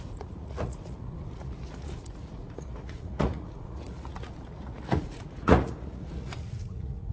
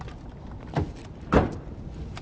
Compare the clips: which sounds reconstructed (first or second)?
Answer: first